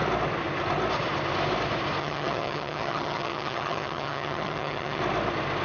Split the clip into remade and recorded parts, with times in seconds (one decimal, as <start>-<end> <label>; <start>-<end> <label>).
0.0-2.0 recorded; 2.0-5.0 remade; 5.0-5.6 recorded

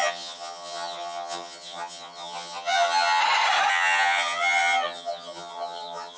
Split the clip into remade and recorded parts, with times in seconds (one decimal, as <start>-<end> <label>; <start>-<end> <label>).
0.0-3.2 remade; 3.2-3.7 recorded; 3.7-6.2 remade

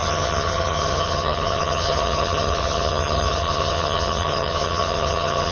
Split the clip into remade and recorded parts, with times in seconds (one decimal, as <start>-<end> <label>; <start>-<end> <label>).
0.0-5.5 remade

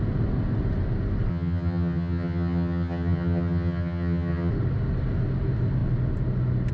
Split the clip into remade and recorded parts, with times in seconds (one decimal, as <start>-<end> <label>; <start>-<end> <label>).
0.0-1.3 recorded; 1.3-4.5 remade; 4.5-6.7 recorded